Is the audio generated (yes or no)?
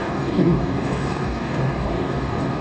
yes